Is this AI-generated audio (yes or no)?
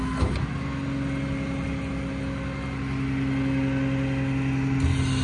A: no